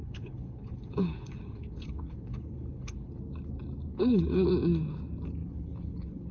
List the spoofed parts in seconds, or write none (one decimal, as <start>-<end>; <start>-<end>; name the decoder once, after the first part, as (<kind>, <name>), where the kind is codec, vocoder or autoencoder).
0.0-3.1 (codec, HILCodec); 3.9-4.5; 5.4-6.3